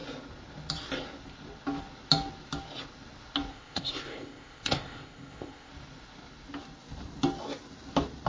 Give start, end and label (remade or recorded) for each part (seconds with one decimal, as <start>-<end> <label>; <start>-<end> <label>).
0.0-3.5 recorded; 3.5-5.7 remade; 5.7-8.3 recorded